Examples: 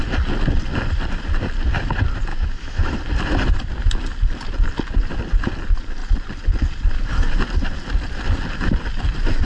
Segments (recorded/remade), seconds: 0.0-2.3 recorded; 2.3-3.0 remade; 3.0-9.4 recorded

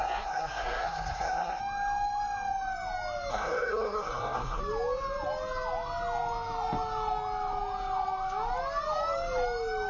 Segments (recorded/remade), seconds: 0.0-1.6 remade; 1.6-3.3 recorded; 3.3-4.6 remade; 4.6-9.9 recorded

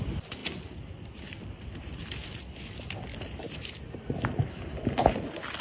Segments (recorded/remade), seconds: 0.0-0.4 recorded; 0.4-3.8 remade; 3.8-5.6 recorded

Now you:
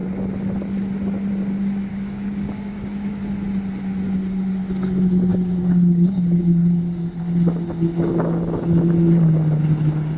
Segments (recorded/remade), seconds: 0.0-1.9 recorded; 1.9-3.2 remade; 3.2-5.3 recorded; 5.3-7.0 remade; 7.0-10.2 recorded